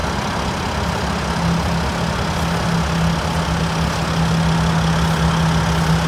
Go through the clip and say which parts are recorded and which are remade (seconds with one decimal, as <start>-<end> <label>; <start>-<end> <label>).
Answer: 0.0-6.1 recorded